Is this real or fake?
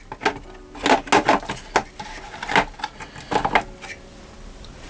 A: real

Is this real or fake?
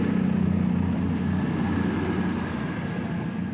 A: real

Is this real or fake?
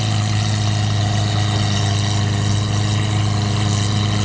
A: real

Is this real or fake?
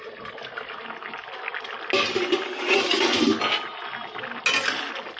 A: real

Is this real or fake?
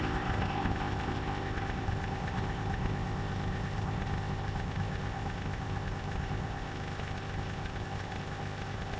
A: fake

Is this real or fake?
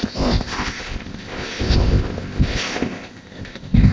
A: fake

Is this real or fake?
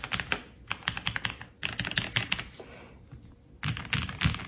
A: real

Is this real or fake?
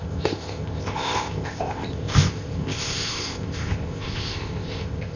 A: fake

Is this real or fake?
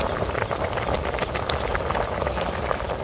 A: real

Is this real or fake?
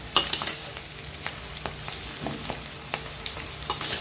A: real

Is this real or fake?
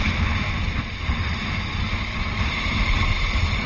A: real